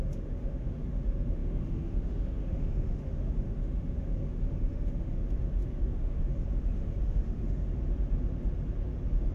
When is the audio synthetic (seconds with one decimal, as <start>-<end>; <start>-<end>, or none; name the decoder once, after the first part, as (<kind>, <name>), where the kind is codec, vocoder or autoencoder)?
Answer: 0.0-7.7 (autoencoder, DAC-VAE)